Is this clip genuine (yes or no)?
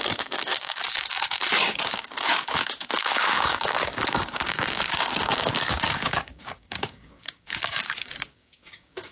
no